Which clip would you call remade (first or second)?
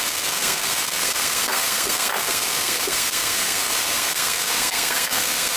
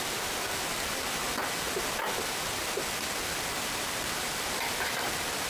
first